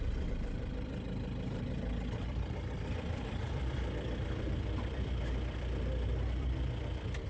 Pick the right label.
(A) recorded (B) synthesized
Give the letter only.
B